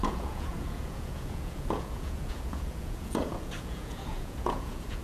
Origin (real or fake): fake